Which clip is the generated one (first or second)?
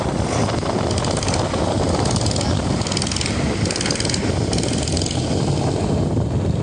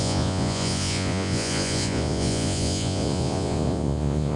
second